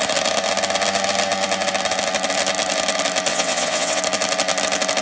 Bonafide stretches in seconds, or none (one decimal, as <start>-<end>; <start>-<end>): 0.0-3.3; 4.0-5.0